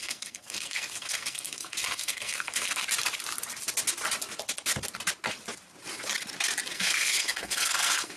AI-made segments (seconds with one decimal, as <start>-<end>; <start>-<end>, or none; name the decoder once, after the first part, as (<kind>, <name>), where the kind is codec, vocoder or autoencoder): 0.0-2.8 (codec, SNAC); 6.7-8.2